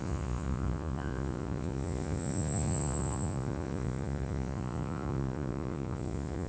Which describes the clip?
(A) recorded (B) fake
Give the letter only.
B